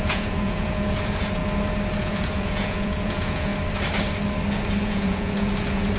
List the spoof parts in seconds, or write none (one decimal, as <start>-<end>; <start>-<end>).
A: 0.0-1.4; 2.0-3.5; 4.8-6.0

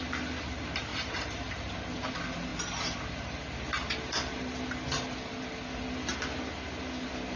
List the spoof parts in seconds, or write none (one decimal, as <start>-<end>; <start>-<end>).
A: 0.9-1.5

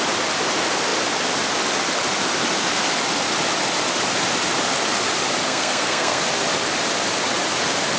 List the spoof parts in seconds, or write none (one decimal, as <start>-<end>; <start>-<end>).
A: 5.4-6.2

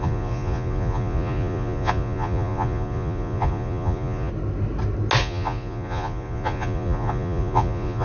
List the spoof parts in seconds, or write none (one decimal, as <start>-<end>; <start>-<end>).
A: 0.0-4.3; 5.2-8.0

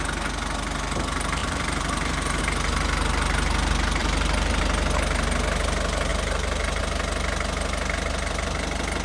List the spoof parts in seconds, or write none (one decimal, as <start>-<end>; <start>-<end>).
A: 1.4-2.4; 4.0-4.6; 6.1-6.8

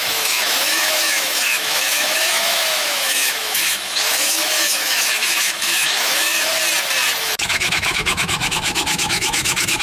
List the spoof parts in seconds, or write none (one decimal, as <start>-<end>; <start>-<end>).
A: 0.0-6.5; 7.2-9.8

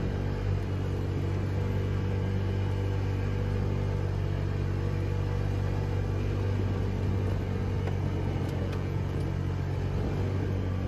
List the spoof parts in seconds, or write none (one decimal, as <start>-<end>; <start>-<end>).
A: 8.6-9.2